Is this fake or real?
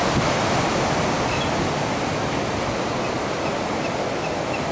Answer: real